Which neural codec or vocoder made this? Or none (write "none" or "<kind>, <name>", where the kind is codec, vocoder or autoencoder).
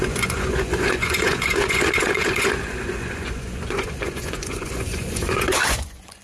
vocoder, Vocos